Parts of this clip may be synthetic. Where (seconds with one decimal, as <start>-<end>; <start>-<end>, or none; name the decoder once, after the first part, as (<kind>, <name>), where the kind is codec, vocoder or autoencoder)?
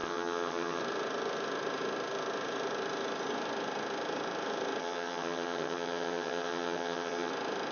0.0-0.8 (vocoder, HiFi-GAN); 4.8-7.3